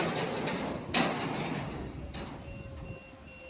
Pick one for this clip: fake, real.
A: real